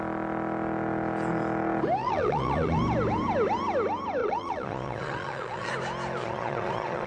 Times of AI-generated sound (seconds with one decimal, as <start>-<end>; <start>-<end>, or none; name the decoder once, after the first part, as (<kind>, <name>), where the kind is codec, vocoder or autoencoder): 2.0-2.8 (vocoder, Vocos); 4.2-5.7; 6.2-7.1